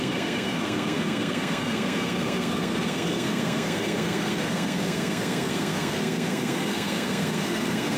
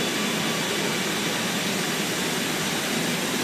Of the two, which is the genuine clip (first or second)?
second